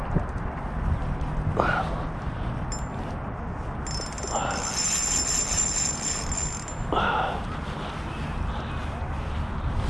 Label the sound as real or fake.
real